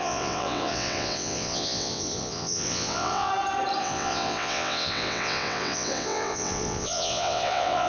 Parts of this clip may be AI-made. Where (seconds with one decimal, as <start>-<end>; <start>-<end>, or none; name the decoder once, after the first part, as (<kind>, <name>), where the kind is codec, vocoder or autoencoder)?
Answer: 0.0-3.3 (vocoder, WaveNeXt); 3.8-7.9